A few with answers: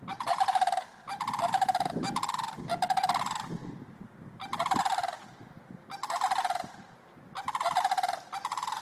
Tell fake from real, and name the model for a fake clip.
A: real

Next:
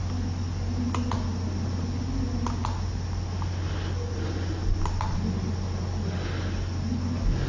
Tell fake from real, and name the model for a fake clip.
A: real